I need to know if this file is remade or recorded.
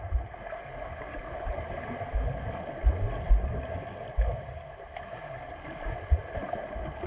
recorded